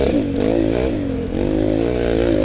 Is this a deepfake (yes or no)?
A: no